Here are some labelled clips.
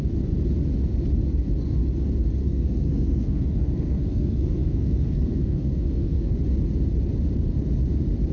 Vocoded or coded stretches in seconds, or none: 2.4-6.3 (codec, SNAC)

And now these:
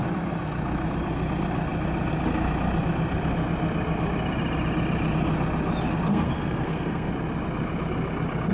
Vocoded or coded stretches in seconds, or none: 6.1-7.1 (codec, SNAC)

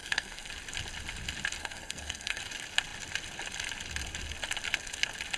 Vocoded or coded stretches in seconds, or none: 0.0-0.5 (codec, SNAC); 1.6-2.4

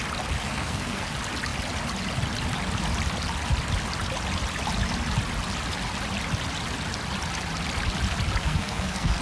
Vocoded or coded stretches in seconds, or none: 0.4-1.1 (codec, SNAC); 8.4-9.2

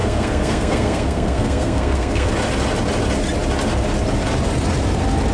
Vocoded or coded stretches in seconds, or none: 0.0-2.3 (codec, SNAC)

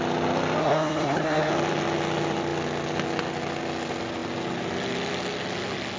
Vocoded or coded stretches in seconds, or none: 0.6-1.5 (codec, SNAC)

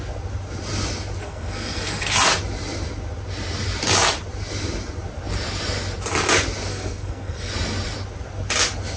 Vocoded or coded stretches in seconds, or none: 1.2-2.1 (codec, SNAC); 6.7-7.5